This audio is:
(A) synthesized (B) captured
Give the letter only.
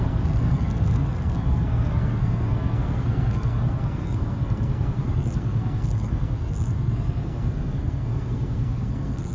A